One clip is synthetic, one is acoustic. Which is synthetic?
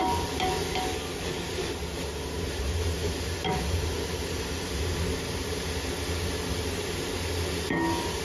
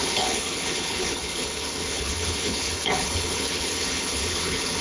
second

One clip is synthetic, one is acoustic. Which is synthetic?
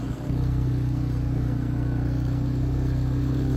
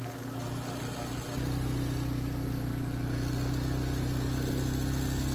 first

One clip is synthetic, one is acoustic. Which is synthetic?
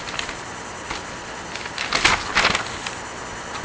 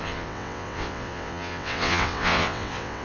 second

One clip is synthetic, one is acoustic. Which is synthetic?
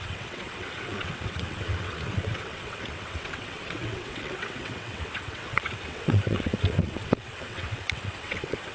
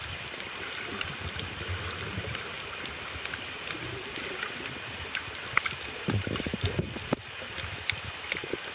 first